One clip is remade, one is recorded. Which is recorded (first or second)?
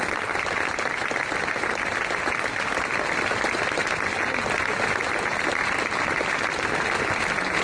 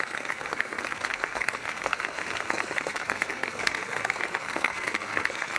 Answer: first